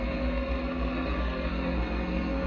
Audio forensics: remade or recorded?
remade